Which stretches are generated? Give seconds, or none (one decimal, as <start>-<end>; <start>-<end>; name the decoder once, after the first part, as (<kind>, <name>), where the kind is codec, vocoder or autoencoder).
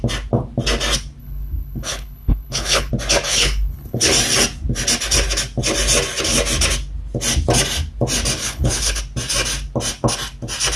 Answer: 1.2-2.9 (codec, HILCodec); 3.3-4.1; 8.4-9.0